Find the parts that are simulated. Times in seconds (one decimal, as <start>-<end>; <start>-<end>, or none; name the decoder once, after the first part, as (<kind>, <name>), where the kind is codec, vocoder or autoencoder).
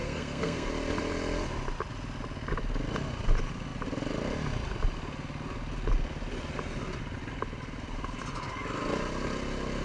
0.0-0.7 (codec, SNAC)